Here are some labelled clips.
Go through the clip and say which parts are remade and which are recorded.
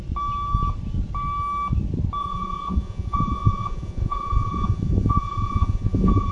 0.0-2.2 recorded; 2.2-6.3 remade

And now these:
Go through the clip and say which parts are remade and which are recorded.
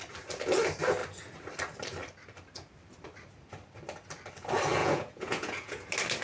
0.0-4.8 recorded; 4.8-5.8 remade; 5.8-6.2 recorded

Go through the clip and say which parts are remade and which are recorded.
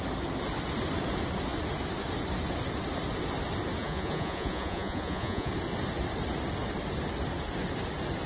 0.0-3.8 recorded; 3.8-5.5 remade; 5.5-8.3 recorded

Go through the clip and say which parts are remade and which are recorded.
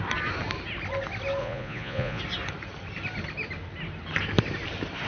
0.0-1.4 recorded; 1.4-2.2 remade; 2.2-5.1 recorded